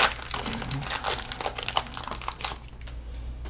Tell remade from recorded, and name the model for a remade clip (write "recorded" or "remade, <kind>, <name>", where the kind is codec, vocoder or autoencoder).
recorded